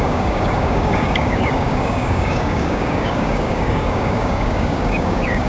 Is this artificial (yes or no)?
yes